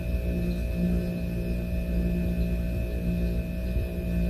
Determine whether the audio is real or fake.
real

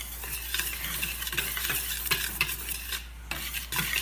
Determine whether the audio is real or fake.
real